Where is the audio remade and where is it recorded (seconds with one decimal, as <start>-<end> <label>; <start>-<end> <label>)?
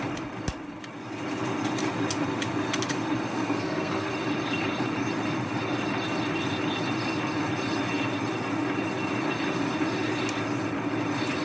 0.0-3.3 recorded; 3.3-4.1 remade; 4.1-11.4 recorded